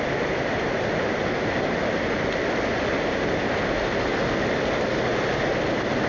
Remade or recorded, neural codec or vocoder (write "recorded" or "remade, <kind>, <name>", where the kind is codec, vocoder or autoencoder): recorded